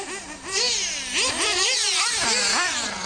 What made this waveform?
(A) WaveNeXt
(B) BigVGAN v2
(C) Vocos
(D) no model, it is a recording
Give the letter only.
D